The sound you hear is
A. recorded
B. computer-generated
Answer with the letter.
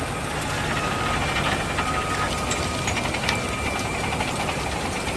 A